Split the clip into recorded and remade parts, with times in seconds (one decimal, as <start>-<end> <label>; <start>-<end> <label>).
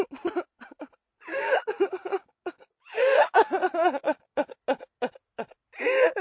0.0-1.3 recorded; 1.3-4.6 remade; 4.6-6.2 recorded